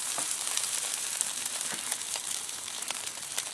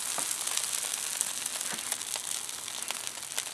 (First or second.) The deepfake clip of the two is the first